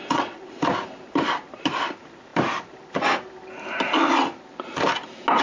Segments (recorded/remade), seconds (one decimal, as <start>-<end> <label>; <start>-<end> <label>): 0.0-0.6 remade; 0.6-5.4 recorded